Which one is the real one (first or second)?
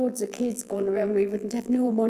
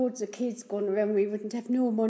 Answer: second